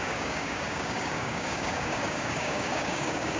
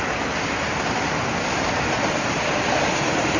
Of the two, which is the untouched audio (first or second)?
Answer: second